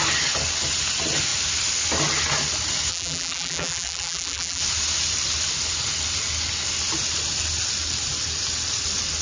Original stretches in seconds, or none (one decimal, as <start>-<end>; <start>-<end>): 0.0-2.9; 4.6-9.2